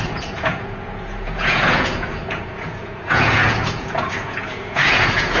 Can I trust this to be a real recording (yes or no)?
no